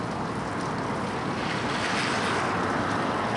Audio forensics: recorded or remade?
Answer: recorded